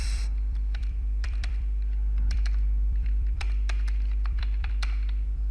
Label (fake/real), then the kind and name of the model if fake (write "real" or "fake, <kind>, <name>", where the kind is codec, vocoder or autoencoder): fake, vocoder, BigVGAN v2